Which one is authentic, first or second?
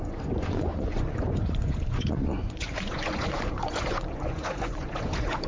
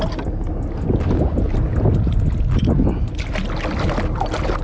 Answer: second